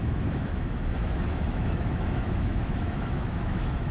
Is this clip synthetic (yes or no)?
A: yes